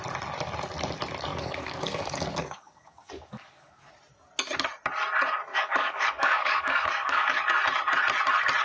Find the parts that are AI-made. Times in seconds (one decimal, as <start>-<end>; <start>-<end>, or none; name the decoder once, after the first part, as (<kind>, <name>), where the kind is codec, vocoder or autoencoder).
1.3-3.9 (codec, DAC); 5.5-7.4